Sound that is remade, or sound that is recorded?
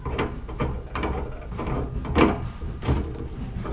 recorded